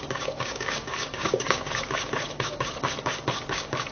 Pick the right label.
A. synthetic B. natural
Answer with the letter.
A